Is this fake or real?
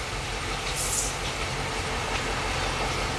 real